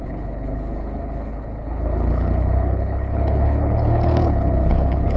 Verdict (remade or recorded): remade